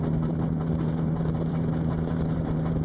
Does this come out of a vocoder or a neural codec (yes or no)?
yes